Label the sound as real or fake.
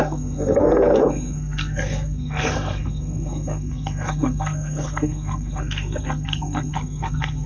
fake